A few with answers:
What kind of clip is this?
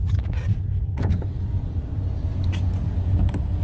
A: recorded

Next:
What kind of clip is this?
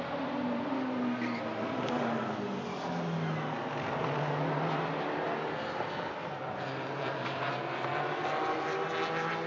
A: recorded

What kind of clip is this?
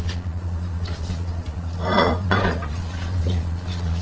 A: remade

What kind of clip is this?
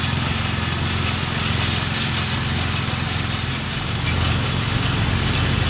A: recorded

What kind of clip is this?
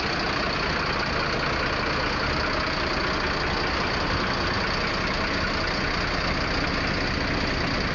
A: recorded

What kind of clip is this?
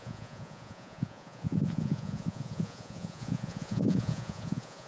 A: remade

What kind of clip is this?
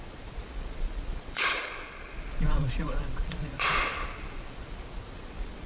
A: remade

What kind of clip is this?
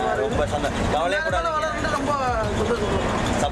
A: recorded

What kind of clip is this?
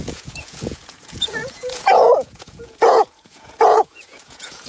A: remade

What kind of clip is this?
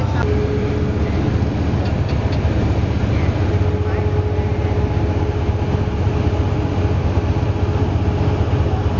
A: recorded